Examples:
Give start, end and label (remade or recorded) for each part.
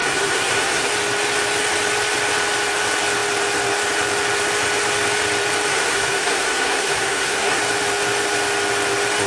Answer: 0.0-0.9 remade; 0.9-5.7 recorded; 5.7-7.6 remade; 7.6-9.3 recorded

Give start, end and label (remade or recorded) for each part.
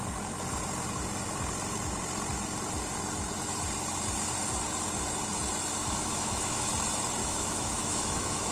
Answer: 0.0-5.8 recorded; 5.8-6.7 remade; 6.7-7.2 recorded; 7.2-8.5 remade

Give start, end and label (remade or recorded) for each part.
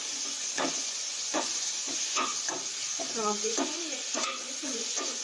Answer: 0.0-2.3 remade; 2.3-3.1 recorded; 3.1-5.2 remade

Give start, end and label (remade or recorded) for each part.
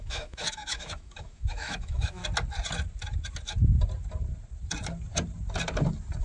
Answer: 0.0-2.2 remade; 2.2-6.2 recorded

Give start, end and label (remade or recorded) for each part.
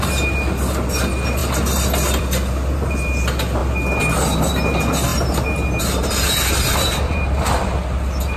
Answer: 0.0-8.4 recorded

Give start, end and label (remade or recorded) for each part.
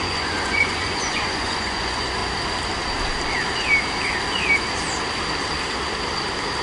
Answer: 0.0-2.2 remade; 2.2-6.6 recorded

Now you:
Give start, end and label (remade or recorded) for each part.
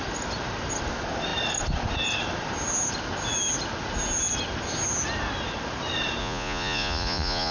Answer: 0.0-6.2 recorded; 6.2-7.5 remade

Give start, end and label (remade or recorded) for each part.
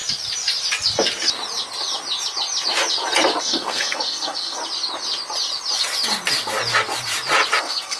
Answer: 0.0-3.4 recorded; 3.4-4.6 remade; 4.6-7.6 recorded; 7.6-8.0 remade